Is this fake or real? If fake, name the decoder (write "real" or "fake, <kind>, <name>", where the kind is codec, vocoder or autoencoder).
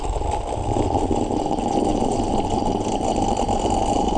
real